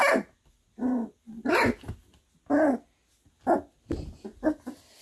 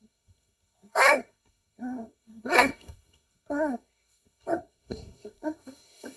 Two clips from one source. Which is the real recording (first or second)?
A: first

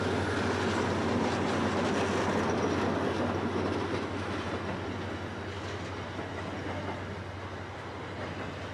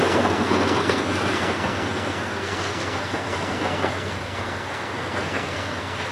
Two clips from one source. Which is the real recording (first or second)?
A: first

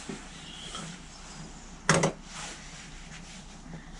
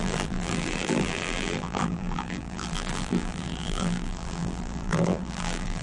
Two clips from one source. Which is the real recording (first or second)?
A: first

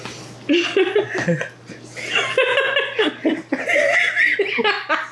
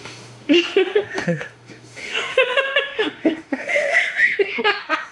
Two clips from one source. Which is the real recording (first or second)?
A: first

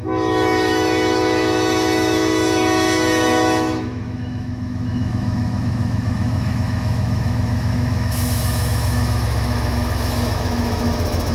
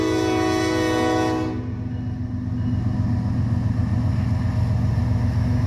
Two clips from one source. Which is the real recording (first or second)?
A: second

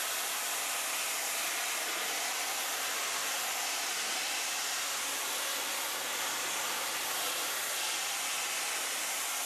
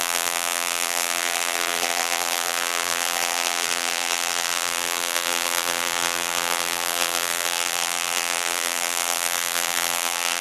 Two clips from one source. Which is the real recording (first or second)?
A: first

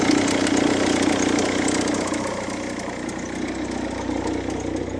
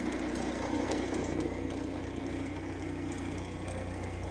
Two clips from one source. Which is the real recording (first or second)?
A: first